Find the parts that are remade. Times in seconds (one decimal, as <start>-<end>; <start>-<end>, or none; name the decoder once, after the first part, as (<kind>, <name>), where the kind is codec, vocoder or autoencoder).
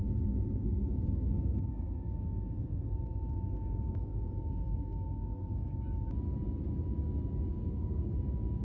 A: 0.6-5.7 (codec, SNAC); 7.5-8.1